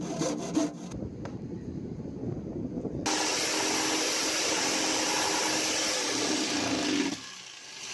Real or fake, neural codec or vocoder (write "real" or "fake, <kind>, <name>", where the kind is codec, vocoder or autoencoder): real